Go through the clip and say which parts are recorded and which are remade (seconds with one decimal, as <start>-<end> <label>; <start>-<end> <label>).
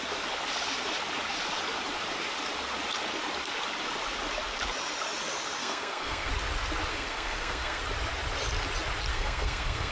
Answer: 0.0-5.6 recorded; 5.6-6.3 remade; 6.3-6.9 recorded; 6.9-7.8 remade; 7.8-9.1 recorded; 9.1-9.9 remade